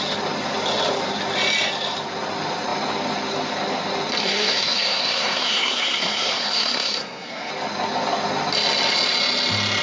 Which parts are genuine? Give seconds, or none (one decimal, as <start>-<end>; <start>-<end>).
0.0-4.2; 7.5-9.8